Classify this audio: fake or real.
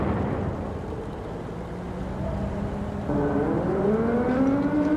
real